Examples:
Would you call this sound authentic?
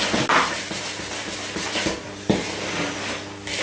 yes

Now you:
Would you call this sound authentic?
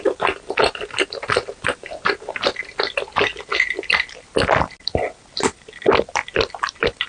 yes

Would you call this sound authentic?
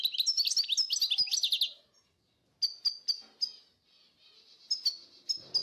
yes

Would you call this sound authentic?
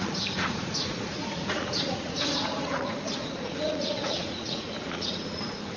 no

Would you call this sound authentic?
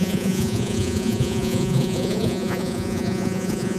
no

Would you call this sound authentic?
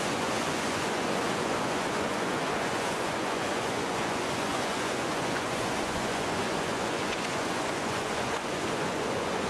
no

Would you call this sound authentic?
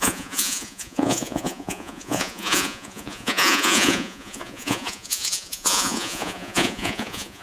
no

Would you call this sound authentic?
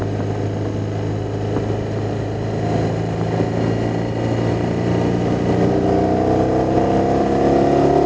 yes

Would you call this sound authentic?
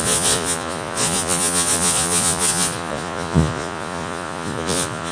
no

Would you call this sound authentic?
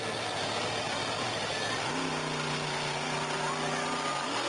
yes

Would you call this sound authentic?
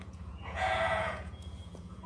no